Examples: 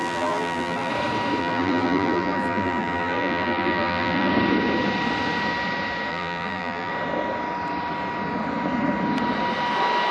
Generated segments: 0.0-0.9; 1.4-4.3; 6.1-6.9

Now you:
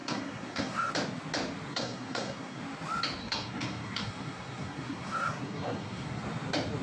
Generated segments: 0.0-0.9; 1.7-2.6; 3.2-6.2

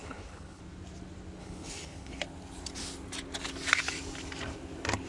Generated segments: 0.0-0.6; 1.4-2.2

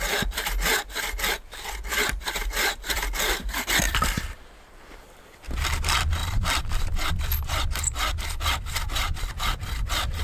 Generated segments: 1.9-5.2; 6.2-7.1

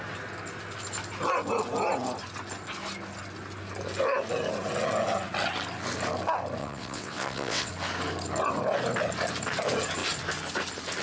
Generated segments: 6.6-7.7